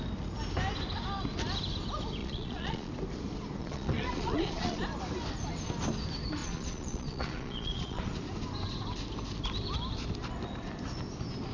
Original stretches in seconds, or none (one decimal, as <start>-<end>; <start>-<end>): 0.0-2.2; 2.9-3.6; 4.8-6.4; 8.0-11.5